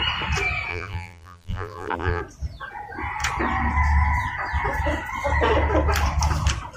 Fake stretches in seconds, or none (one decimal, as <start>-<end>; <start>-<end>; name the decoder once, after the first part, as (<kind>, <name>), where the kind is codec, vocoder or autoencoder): 0.7-2.2 (vocoder, BigVGAN v2)